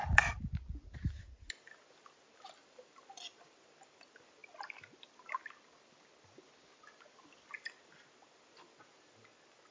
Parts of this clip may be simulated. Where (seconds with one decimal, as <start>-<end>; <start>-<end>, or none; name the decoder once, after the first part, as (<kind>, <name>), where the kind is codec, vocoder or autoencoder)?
0.0-1.2 (vocoder, BigVGAN v2); 4.4-7.5